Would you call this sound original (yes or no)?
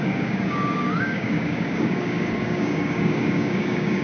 no